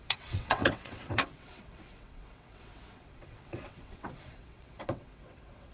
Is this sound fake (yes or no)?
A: yes